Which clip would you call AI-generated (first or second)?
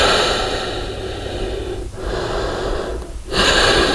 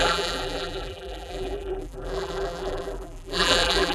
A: second